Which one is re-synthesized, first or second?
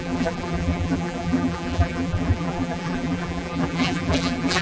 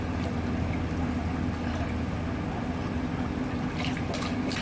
first